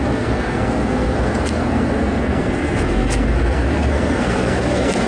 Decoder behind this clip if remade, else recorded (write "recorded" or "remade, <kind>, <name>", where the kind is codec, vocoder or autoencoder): remade, codec, SNAC